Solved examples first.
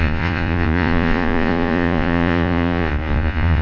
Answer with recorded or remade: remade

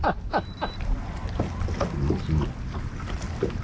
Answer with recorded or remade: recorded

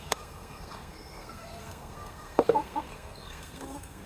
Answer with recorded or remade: remade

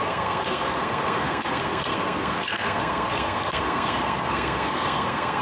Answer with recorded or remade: remade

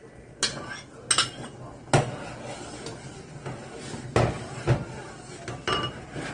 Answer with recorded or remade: recorded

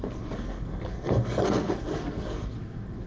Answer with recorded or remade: remade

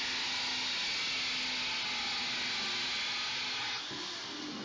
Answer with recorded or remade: recorded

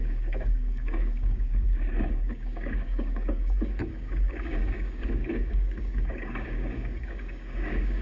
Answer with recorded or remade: remade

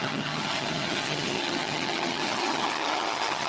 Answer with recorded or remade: remade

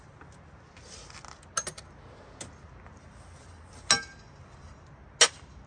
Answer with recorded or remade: recorded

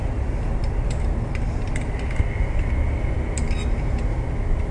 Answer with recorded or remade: recorded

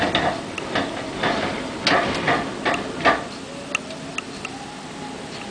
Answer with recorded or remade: recorded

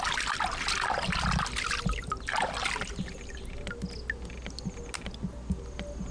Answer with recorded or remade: recorded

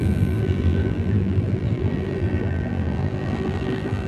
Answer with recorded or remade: remade